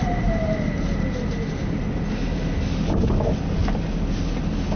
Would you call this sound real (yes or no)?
yes